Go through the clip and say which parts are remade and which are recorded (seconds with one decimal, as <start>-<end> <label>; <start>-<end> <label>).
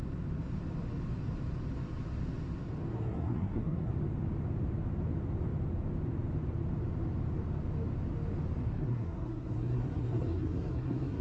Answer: 0.0-2.9 recorded; 2.9-3.9 remade; 3.9-8.6 recorded; 8.6-11.2 remade